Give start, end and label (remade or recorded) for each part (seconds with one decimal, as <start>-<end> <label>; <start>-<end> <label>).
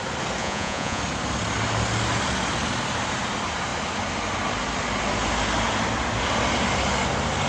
0.0-0.4 recorded; 0.4-1.0 remade; 1.0-7.5 recorded